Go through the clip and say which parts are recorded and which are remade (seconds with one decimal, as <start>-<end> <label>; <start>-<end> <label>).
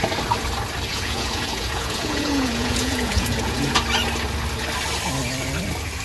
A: 0.0-0.9 recorded; 0.9-3.8 remade; 3.8-6.0 recorded